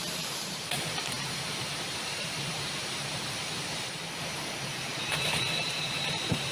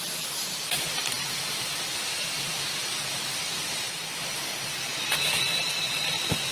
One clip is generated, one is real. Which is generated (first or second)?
first